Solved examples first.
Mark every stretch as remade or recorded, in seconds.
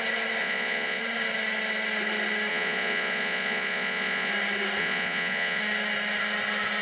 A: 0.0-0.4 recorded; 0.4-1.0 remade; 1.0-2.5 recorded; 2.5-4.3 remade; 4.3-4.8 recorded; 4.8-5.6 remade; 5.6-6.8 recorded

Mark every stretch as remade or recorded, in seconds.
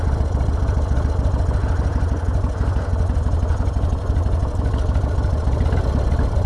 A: 0.0-6.5 recorded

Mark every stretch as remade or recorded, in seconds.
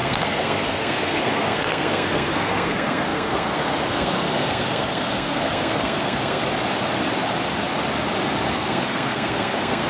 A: 0.0-6.4 remade; 6.4-8.5 recorded; 8.5-9.9 remade